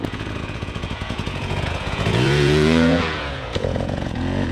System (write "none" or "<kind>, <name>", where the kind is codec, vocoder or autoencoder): vocoder, Vocos